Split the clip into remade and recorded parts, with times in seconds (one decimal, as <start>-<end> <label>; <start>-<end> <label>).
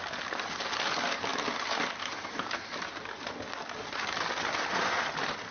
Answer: 0.0-1.3 recorded; 1.3-2.9 remade; 2.9-5.5 recorded